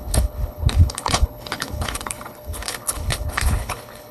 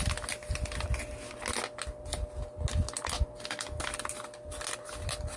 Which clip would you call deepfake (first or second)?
first